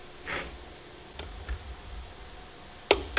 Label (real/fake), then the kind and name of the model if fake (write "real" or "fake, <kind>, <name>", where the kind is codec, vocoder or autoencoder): real